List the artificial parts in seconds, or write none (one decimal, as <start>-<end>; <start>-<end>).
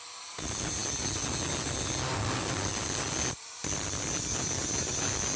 none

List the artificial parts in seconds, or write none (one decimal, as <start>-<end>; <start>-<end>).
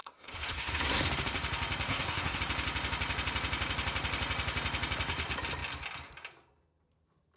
0.0-1.0; 1.9-2.4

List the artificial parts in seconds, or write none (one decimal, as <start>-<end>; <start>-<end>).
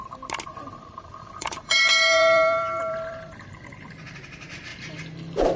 0.5-3.9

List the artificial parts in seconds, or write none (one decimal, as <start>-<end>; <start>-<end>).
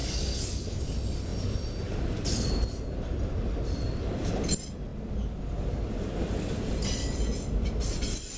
0.0-0.8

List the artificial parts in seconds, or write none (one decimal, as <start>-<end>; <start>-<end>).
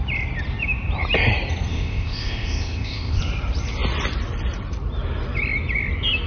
1.7-3.2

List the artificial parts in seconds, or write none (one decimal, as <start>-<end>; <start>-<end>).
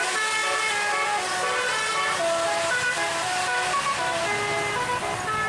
none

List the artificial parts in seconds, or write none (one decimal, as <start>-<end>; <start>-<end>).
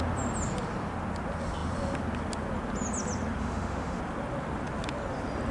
3.4-4.0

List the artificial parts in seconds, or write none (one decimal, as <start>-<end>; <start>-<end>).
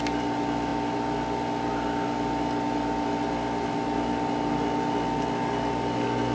none